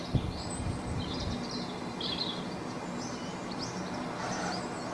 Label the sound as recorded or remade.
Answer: recorded